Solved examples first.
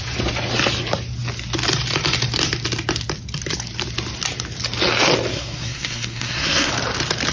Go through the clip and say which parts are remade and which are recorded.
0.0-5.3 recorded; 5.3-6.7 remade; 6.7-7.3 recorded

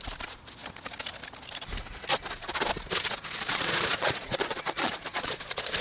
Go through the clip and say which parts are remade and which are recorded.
0.0-3.5 recorded; 3.5-5.8 remade